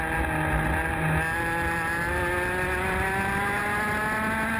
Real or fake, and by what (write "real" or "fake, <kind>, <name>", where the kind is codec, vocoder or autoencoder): real